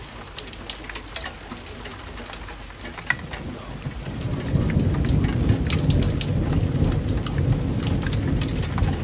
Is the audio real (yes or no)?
yes